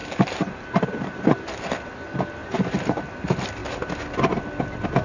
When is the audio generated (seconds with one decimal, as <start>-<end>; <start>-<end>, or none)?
0.0-1.6; 2.4-3.0